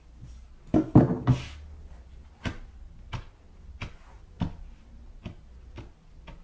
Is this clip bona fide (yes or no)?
yes